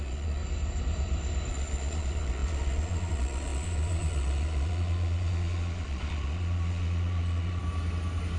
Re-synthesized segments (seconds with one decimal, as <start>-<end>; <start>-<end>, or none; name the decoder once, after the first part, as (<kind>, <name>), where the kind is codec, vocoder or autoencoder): 0.0-0.4 (vocoder, Vocos); 1.5-7.6